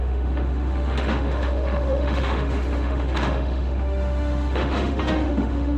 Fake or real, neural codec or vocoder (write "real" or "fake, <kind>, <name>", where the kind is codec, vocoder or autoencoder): fake, autoencoder, DAC-VAE